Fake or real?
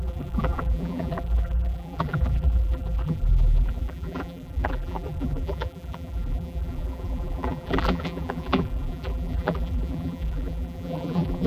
fake